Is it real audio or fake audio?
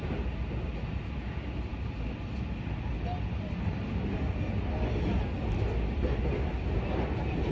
real